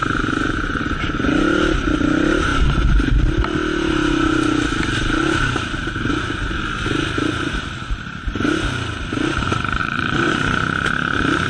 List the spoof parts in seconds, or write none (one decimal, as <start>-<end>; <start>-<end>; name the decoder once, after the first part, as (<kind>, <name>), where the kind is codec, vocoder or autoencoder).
9.8-10.3 (vocoder, Vocos)